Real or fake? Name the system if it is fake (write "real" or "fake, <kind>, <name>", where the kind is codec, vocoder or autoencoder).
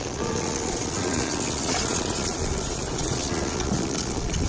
fake, vocoder, Vocos